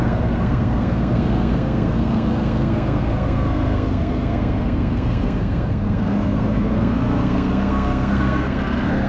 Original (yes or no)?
no